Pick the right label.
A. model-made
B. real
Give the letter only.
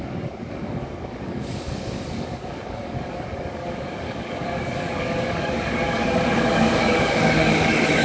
A